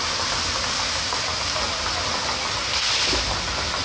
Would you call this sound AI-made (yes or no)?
no